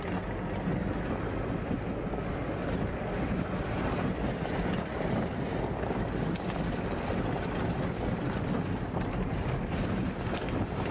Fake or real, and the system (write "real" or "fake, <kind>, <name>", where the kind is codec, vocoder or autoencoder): real